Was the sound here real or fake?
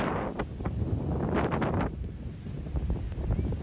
real